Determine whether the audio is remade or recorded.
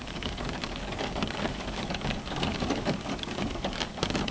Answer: remade